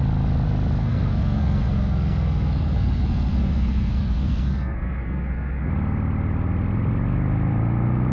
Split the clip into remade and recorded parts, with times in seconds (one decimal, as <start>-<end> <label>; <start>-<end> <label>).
0.0-0.8 recorded; 0.8-5.7 remade; 5.7-8.1 recorded